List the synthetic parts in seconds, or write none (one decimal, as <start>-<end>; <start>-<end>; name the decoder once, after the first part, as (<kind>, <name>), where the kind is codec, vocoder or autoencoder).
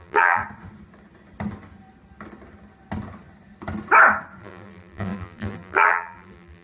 0.0-0.4 (vocoder, BigVGAN v2); 4.4-6.6